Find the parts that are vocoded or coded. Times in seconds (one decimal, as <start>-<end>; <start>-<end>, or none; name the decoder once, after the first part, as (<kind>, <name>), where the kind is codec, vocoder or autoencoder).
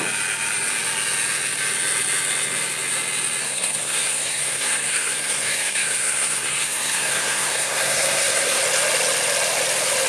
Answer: 3.4-8.6 (codec, SNAC)